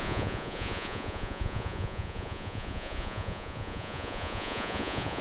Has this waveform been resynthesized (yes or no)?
yes